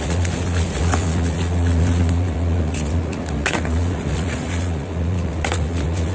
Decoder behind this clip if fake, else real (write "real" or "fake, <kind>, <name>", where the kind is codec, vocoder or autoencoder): fake, vocoder, Vocos